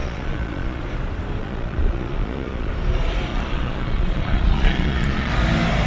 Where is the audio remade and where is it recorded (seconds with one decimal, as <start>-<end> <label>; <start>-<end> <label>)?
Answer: 0.0-0.8 remade; 0.8-1.4 recorded; 1.4-2.7 remade; 2.7-3.3 recorded; 3.3-5.3 remade; 5.3-5.9 recorded